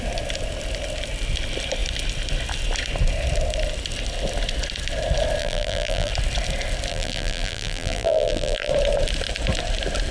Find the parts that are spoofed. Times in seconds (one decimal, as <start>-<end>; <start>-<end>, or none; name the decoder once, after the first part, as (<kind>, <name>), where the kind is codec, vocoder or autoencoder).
5.4-6.1 (vocoder, BigVGAN v2); 6.9-8.7

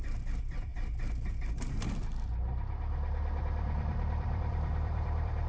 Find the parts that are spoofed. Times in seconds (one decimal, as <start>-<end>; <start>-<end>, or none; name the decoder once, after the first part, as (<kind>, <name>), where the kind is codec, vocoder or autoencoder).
0.0-0.7 (vocoder, BigVGAN v2); 3.4-5.5

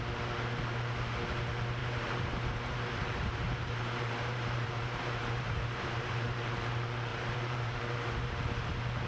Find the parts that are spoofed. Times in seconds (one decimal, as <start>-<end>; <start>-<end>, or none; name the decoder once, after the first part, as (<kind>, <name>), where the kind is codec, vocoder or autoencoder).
1.8-6.4 (vocoder, BigVGAN v2); 7.1-8.3

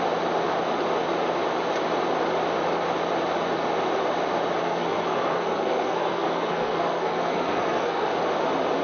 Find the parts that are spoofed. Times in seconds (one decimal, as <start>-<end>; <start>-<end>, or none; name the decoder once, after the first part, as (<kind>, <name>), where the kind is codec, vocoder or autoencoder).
4.6-8.1 (codec, SNAC)

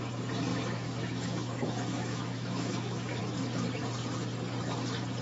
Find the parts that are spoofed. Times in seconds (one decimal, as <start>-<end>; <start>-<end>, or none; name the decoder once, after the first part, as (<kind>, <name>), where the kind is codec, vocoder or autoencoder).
0.5-3.2 (autoencoder, DAC-VAE)

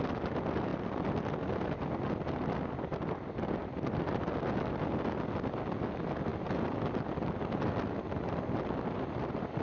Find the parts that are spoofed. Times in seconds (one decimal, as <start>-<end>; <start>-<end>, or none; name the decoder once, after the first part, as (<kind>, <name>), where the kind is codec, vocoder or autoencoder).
none

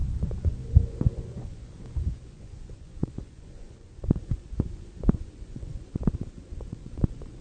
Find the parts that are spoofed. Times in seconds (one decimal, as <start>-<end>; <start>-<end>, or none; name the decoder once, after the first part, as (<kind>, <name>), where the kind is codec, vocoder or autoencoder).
0.0-7.4 (vocoder, Vocos)